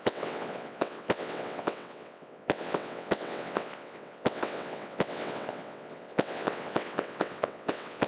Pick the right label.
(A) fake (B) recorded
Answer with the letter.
A